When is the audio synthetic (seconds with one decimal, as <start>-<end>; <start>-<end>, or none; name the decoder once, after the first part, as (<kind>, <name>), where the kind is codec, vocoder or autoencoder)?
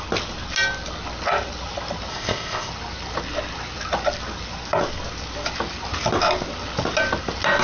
2.1-2.7 (codec, ZipCodec)